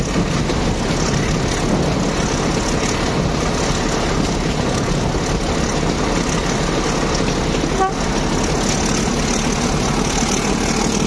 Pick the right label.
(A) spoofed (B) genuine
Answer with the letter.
B